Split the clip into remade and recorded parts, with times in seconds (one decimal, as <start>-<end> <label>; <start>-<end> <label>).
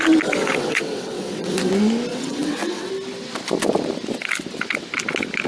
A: 0.0-0.4 recorded; 0.4-1.7 remade; 1.7-2.1 recorded; 2.1-2.9 remade; 2.9-5.5 recorded